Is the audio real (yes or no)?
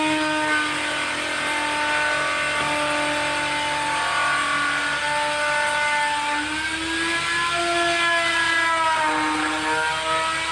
yes